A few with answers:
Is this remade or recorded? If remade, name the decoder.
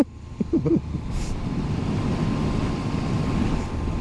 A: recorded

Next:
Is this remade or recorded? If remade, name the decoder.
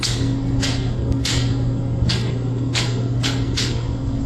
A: remade, codec, SNAC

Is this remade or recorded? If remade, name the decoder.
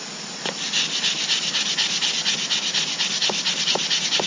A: recorded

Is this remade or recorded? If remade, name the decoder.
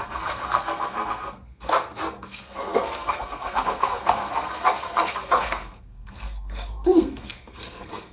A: remade, codec, SNAC